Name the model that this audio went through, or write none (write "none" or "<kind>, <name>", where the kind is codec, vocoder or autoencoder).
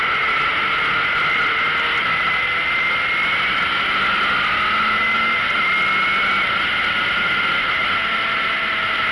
none